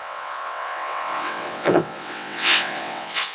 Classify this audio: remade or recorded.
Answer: remade